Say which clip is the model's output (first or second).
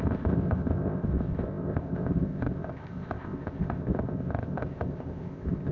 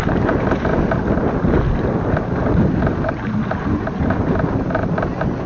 first